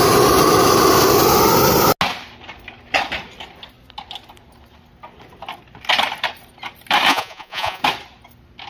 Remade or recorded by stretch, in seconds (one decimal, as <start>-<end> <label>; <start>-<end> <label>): 0.0-7.1 recorded; 7.1-7.8 remade; 7.8-8.7 recorded